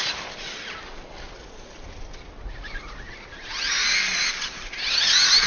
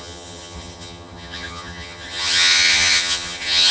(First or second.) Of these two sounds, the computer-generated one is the second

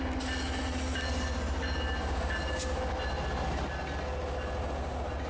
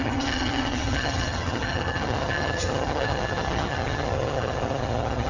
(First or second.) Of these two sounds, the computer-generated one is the second